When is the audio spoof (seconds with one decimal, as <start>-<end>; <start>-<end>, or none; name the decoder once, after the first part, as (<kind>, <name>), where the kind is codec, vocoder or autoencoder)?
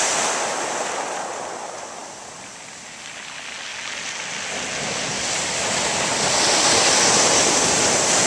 none